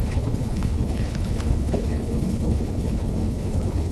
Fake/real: fake